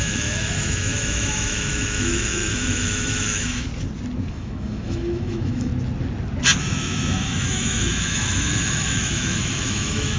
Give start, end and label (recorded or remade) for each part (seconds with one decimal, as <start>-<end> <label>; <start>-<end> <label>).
0.0-3.7 remade; 3.7-4.3 recorded; 4.3-5.7 remade; 5.7-6.6 recorded; 6.6-10.2 remade